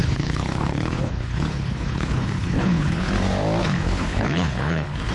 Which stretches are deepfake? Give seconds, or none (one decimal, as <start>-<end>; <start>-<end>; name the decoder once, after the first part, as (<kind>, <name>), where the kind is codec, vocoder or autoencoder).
0.0-3.1 (codec, HILCodec); 3.6-5.1